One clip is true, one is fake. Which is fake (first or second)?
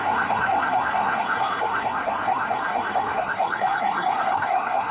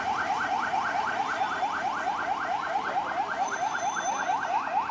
first